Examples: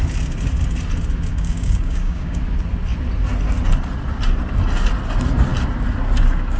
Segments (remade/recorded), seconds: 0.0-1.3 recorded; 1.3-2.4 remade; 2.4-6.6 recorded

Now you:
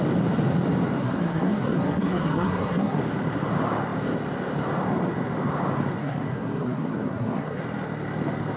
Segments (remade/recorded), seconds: 0.0-1.0 recorded; 1.0-3.0 remade; 3.0-6.0 recorded; 6.0-7.6 remade; 7.6-8.6 recorded

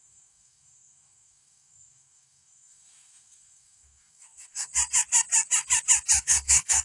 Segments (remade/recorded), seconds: 0.0-4.7 remade; 4.7-6.2 recorded; 6.2-6.8 remade

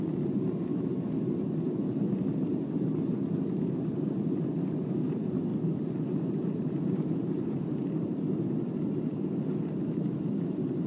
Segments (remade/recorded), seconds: 0.0-5.5 remade; 5.5-6.2 recorded; 6.2-10.9 remade

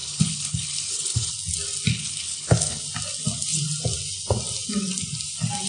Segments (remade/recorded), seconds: 0.0-1.3 remade; 1.3-1.9 recorded; 1.9-2.8 remade; 2.8-5.7 recorded